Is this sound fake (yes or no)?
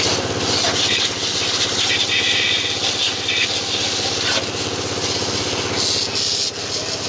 no